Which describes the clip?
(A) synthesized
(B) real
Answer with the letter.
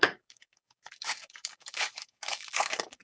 A